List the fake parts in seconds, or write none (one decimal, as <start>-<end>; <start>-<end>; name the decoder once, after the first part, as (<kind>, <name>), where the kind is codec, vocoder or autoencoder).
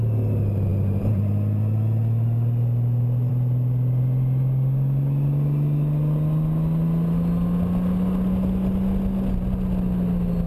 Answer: none